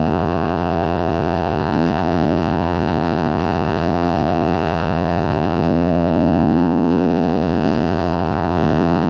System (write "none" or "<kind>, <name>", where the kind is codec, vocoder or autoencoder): vocoder, Vocos